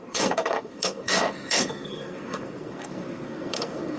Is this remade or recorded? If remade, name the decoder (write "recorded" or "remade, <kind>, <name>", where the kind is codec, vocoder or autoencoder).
remade, codec, SNAC